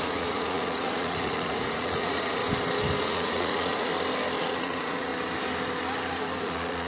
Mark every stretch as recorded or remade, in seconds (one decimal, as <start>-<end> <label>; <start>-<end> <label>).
0.0-2.4 remade; 2.4-3.0 recorded; 3.0-3.9 remade; 3.9-4.4 recorded; 4.4-5.1 remade; 5.1-6.4 recorded; 6.4-6.9 remade